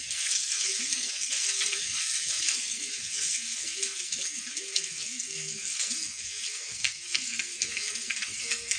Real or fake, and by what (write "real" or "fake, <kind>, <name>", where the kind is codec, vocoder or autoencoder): fake, codec, SNAC